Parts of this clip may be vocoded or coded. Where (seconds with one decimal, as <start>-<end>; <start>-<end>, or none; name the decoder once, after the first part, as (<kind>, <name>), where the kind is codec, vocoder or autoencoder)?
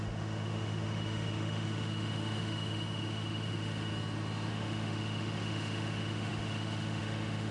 0.0-3.9 (autoencoder, DAC-VAE); 4.5-7.5